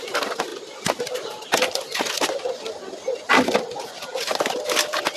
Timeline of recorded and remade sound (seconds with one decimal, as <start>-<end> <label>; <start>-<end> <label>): 0.0-5.2 recorded